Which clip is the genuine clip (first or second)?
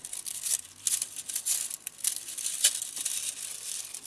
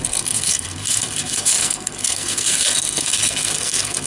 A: first